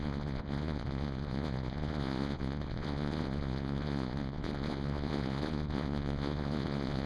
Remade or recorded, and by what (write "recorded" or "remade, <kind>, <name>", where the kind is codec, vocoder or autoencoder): remade, vocoder, Vocos